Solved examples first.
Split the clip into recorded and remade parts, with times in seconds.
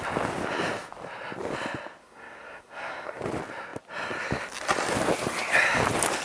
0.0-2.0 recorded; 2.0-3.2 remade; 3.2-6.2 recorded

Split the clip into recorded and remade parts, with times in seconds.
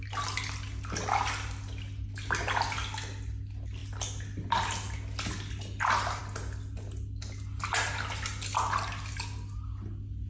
0.0-10.3 recorded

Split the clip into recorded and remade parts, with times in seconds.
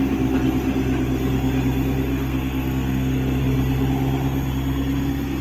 0.0-2.1 recorded; 2.1-3.4 remade; 3.4-5.4 recorded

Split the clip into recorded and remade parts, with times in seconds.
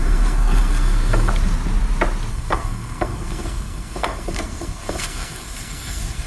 0.0-1.3 remade; 1.3-2.3 recorded; 2.3-6.3 remade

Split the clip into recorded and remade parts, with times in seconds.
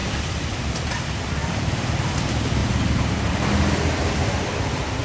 0.0-2.6 remade; 2.6-4.1 recorded; 4.1-5.0 remade